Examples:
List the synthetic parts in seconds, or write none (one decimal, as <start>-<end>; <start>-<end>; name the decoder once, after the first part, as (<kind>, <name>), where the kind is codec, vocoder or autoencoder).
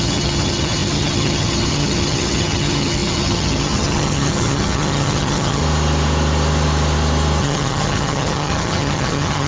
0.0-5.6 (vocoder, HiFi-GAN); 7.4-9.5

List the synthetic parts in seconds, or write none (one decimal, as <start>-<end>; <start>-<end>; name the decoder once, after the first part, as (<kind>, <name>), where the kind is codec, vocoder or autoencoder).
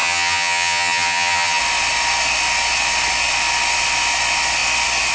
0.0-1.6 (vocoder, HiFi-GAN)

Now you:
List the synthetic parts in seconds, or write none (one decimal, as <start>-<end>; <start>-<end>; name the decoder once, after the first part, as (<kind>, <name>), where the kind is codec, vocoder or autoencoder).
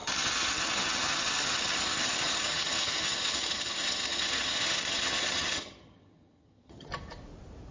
0.0-6.9 (vocoder, HiFi-GAN)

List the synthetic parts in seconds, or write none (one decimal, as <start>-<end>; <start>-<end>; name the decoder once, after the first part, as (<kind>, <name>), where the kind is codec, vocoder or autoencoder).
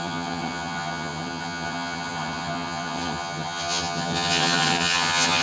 0.0-5.4 (vocoder, HiFi-GAN)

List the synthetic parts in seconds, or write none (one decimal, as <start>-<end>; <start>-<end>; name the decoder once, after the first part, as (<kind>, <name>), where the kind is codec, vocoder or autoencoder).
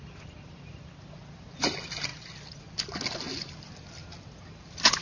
none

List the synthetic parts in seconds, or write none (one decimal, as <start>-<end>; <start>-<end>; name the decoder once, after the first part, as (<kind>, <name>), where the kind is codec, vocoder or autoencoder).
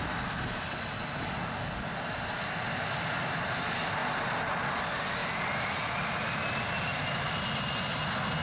none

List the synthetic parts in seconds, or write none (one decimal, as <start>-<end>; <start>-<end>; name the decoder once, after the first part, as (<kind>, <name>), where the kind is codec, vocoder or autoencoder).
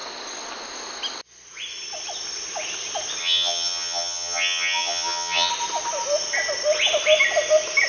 3.2-5.5 (vocoder, HiFi-GAN)